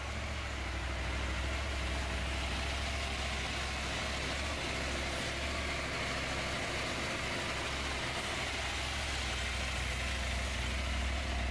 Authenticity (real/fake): real